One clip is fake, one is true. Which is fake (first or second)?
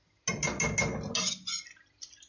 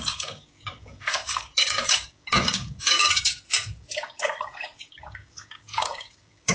second